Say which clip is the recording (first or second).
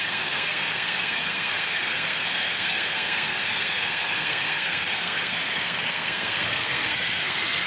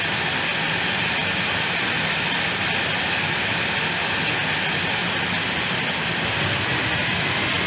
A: second